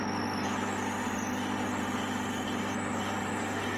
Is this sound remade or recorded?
recorded